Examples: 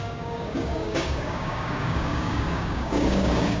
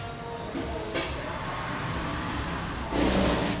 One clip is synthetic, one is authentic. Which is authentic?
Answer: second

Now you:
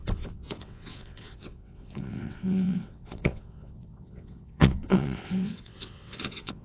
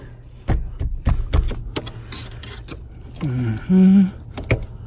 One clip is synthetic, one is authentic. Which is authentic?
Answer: second